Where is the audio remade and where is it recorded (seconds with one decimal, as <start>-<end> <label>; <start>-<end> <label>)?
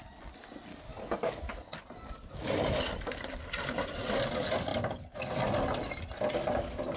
0.0-0.7 recorded; 0.7-1.4 remade; 1.4-7.0 recorded